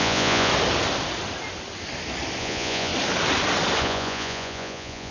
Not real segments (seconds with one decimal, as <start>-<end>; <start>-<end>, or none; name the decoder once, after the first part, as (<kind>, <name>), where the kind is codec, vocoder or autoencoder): 0.0-0.5 (vocoder, Vocos); 2.4-2.9; 3.8-5.1